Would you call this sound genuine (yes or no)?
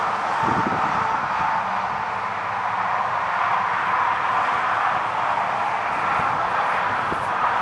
yes